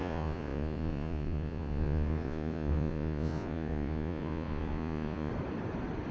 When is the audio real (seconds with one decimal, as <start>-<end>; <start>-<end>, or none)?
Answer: 5.3-6.1